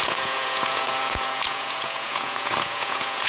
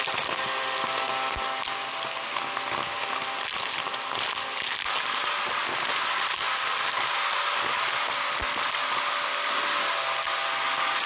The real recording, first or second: second